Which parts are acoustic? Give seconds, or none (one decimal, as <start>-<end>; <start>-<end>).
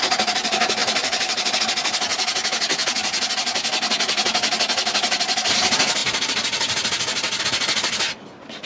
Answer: 0.0-0.8; 1.6-8.7